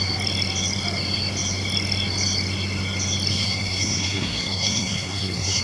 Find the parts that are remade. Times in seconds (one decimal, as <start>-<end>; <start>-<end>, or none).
3.3-5.6